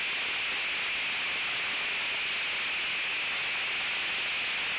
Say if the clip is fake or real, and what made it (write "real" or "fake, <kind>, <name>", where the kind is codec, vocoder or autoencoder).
real